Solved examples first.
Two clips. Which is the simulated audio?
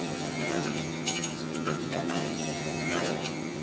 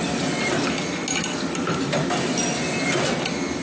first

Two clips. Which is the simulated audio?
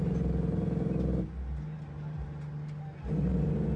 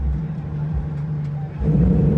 second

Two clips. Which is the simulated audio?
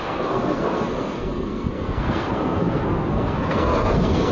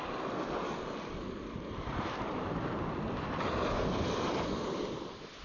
first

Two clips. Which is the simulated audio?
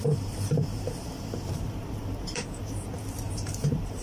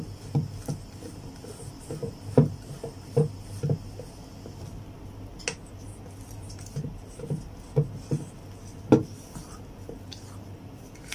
first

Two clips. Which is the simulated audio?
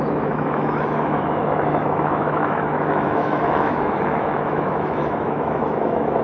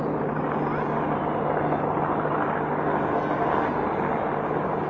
first